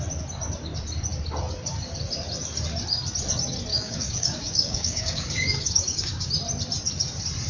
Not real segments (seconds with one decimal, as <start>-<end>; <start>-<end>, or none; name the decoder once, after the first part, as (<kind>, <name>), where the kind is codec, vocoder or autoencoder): 3.7-6.3 (codec, DAC)